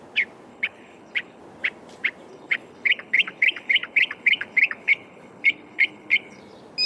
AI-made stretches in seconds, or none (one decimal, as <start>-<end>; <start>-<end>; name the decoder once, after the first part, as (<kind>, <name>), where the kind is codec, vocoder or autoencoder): 0.5-1.4 (codec, HILCodec); 2.3-6.4